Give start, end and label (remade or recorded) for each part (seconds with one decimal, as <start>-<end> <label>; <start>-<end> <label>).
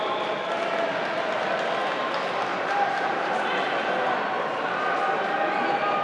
0.0-2.5 recorded; 2.5-3.3 remade; 3.3-6.0 recorded